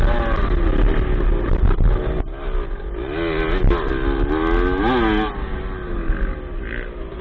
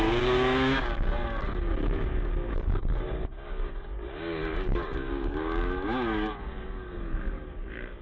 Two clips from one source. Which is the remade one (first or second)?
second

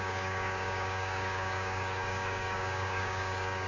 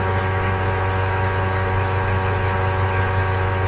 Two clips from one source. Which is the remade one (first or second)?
first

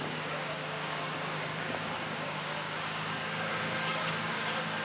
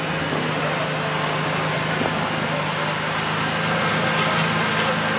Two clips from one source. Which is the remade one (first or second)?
first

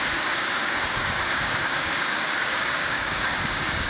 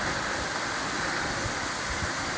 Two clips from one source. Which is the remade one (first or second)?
first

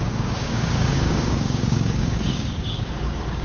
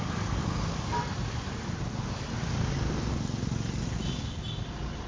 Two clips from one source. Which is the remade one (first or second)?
first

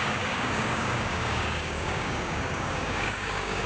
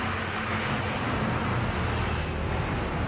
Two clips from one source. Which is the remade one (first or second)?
first